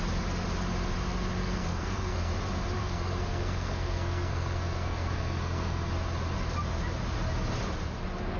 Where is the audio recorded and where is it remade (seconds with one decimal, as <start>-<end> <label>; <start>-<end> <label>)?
0.0-1.4 recorded; 1.4-2.3 remade; 2.3-2.8 recorded; 2.8-5.9 remade; 5.9-8.4 recorded